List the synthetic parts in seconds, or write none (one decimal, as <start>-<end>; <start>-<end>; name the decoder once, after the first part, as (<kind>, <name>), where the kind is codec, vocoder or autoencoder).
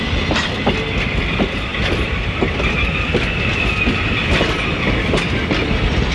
none